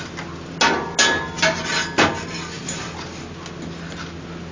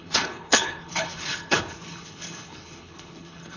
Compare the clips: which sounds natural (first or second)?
first